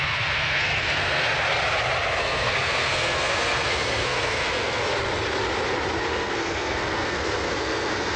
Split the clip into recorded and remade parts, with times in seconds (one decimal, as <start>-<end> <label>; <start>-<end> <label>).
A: 0.0-1.2 remade; 1.2-2.2 recorded; 2.2-4.9 remade; 4.9-6.0 recorded; 6.0-8.2 remade